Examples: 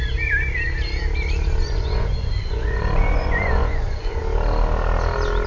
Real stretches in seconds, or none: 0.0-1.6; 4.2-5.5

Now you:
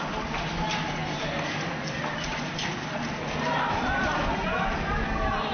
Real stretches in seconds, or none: 0.0-5.5

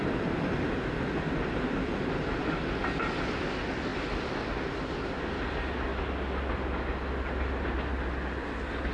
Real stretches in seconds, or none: 0.0-8.9

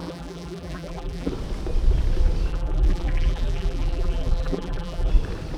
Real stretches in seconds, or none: 1.3-2.5; 5.1-5.6